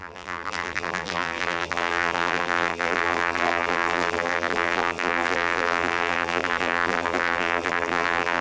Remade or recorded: remade